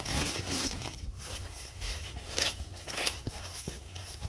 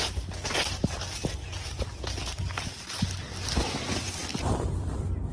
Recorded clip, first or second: second